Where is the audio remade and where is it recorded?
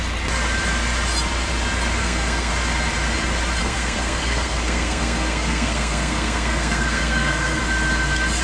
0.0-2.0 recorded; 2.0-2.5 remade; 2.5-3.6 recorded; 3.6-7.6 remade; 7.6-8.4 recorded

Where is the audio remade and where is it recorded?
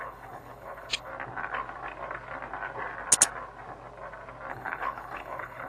0.0-1.1 remade; 1.1-4.5 recorded; 4.5-5.7 remade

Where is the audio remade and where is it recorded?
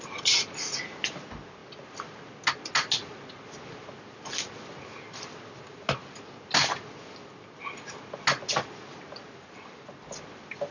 0.0-10.7 recorded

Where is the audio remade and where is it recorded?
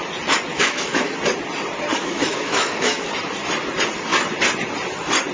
0.0-0.5 recorded; 0.5-1.1 remade; 1.1-1.9 recorded; 1.9-3.1 remade; 3.1-5.3 recorded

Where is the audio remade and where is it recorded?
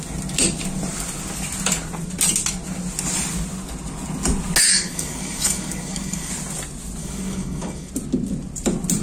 0.0-4.7 recorded; 4.7-6.3 remade; 6.3-7.0 recorded; 7.0-7.9 remade; 7.9-9.0 recorded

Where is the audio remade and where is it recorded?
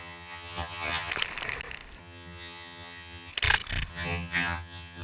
0.0-1.1 remade; 1.1-2.0 recorded; 2.0-3.3 remade; 3.3-3.9 recorded; 3.9-5.0 remade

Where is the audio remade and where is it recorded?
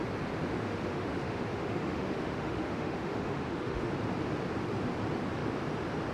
0.0-0.4 recorded; 0.4-3.9 remade; 3.9-6.1 recorded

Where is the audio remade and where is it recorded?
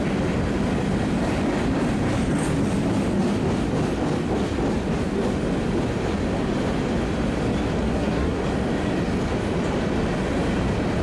0.0-7.8 recorded; 7.8-8.4 remade; 8.4-11.0 recorded